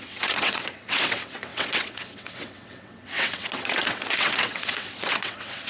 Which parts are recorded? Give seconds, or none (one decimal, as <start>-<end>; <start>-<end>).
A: none